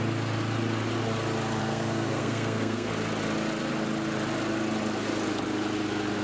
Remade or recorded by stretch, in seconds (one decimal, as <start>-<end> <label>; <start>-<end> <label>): 0.0-1.6 recorded; 1.6-2.9 remade; 2.9-6.2 recorded